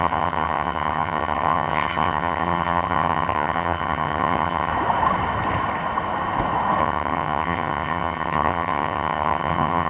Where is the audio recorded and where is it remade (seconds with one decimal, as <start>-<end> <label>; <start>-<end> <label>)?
0.0-4.7 remade; 4.7-6.8 recorded; 6.8-9.9 remade